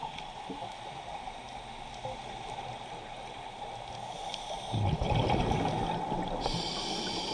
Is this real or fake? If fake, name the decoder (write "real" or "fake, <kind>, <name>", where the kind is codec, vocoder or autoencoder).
real